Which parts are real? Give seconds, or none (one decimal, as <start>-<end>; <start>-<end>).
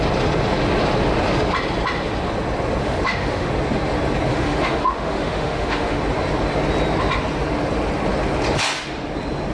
0.0-2.8; 3.5-4.3; 6.0-9.5